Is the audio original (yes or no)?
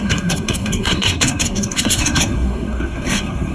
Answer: no